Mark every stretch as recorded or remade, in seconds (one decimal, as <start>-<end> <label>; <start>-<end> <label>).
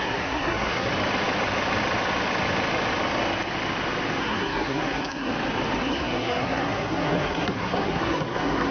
0.0-0.9 remade; 0.9-4.2 recorded; 4.2-5.3 remade; 5.3-5.8 recorded; 5.8-8.7 remade